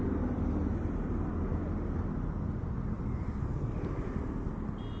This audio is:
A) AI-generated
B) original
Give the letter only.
B